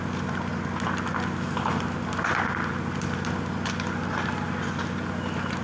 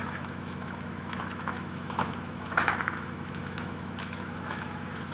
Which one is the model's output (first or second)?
second